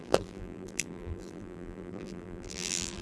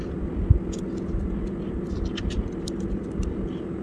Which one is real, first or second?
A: second